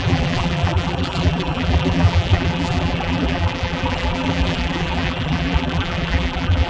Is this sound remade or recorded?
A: remade